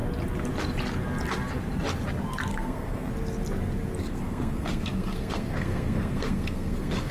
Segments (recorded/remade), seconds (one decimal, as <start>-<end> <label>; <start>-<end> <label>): 0.0-2.5 recorded; 2.5-3.1 remade; 3.1-4.0 recorded; 4.0-7.1 remade